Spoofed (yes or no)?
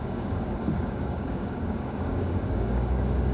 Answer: yes